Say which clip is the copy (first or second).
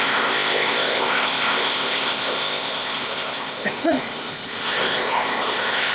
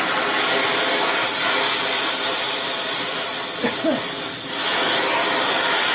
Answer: first